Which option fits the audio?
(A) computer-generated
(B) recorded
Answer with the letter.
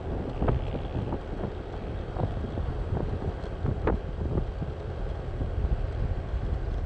B